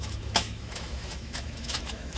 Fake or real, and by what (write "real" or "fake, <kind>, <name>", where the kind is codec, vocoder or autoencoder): fake, autoencoder, DAC-VAE